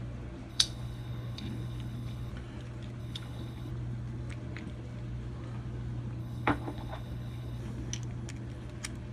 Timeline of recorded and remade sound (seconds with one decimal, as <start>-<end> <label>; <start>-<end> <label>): 0.0-0.5 recorded; 0.5-2.3 remade; 2.3-3.0 recorded; 3.0-3.7 remade; 3.7-6.2 recorded; 6.2-7.6 remade; 7.6-9.1 recorded